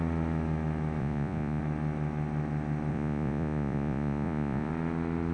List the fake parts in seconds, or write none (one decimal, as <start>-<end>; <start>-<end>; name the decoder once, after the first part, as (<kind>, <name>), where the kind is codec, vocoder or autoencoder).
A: 1.0-1.6 (vocoder, Vocos); 2.9-4.7